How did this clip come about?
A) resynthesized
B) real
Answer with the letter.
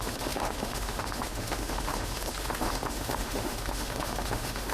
A